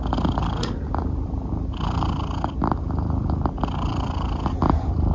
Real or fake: real